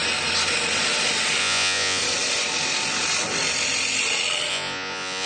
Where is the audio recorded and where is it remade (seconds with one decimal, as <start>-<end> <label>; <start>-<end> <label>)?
0.0-1.4 recorded; 1.4-2.0 remade; 2.0-4.5 recorded; 4.5-5.3 remade

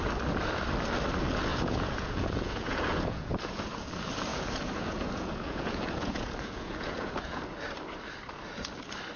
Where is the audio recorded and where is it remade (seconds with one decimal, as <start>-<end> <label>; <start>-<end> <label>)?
0.0-1.5 recorded; 1.5-3.9 remade; 3.9-4.3 recorded; 4.3-7.4 remade; 7.4-9.2 recorded

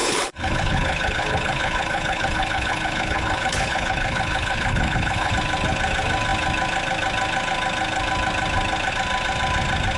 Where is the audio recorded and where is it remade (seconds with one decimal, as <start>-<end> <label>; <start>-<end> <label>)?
0.0-5.3 remade; 5.3-10.0 recorded